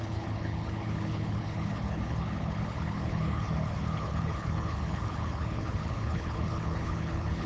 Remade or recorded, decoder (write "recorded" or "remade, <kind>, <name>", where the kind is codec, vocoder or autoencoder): remade, codec, HILCodec